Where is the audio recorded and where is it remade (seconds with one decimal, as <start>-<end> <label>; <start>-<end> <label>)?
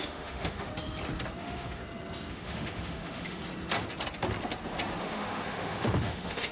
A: 0.0-0.7 remade; 0.7-1.4 recorded; 1.4-1.8 remade; 1.8-2.3 recorded; 2.3-3.4 remade; 3.4-5.0 recorded; 5.0-6.5 remade